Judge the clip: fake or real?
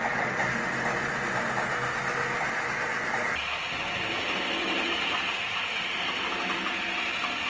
real